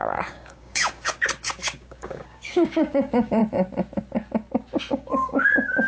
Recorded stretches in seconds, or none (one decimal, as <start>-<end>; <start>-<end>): 3.4-4.9